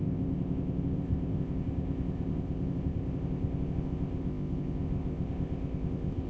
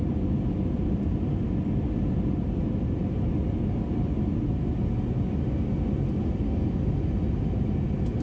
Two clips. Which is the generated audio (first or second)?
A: first